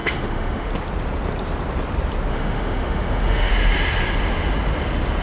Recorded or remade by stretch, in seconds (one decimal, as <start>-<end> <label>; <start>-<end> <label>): 0.0-0.7 remade; 0.7-2.3 recorded; 2.3-3.5 remade; 3.5-5.2 recorded